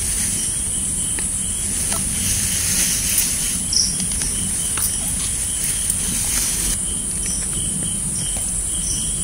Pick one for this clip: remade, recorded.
recorded